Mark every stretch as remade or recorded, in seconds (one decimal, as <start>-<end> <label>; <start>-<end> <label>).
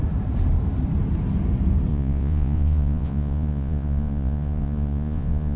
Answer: 0.0-1.9 recorded; 1.9-5.6 remade